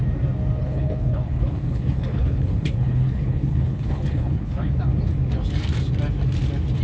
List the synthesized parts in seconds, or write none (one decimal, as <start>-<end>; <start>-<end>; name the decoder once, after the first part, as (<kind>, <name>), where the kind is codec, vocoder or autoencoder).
0.6-4.7 (codec, HILCodec)